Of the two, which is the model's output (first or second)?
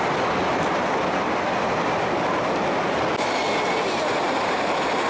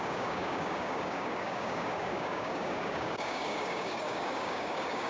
second